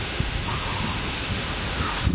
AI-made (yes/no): yes